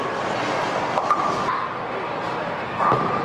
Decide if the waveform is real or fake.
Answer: real